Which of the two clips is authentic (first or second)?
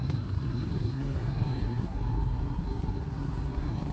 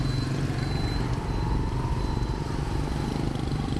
second